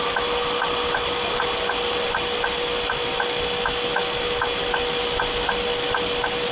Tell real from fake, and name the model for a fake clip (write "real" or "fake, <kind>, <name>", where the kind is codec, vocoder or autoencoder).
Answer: real